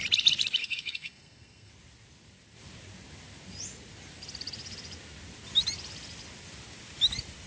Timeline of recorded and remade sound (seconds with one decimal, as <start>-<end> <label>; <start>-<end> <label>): 0.0-0.6 recorded; 0.6-1.7 remade; 1.7-7.5 recorded